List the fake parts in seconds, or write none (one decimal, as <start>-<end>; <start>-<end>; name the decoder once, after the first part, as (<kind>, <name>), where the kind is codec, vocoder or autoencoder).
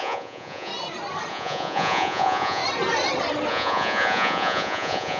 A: 0.0-0.7 (vocoder, Vocos); 1.3-2.6; 3.5-5.2